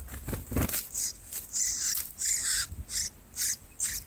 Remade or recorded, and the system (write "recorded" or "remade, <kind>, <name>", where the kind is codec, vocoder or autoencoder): recorded